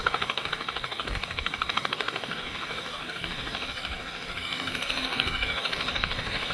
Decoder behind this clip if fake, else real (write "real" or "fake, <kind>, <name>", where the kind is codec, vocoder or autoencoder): fake, codec, DAC